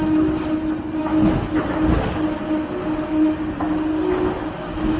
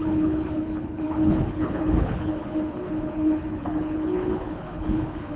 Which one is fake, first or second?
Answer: second